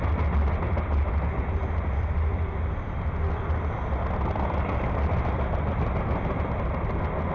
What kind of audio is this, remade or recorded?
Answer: recorded